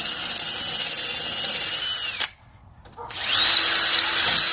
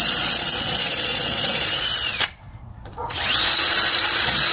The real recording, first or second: first